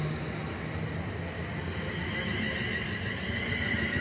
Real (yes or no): yes